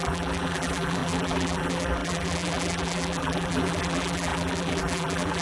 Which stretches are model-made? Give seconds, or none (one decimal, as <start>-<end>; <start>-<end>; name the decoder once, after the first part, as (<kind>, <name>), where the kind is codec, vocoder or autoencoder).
0.0-5.4 (vocoder, BigVGAN v2)